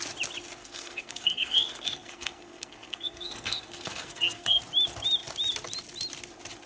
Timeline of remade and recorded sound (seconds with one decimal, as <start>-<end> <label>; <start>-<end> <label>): 0.0-0.6 recorded; 0.6-4.6 remade; 4.6-6.7 recorded